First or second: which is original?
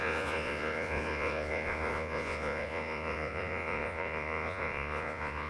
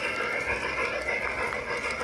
second